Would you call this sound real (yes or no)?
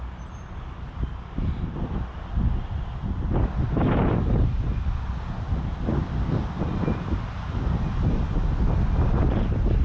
yes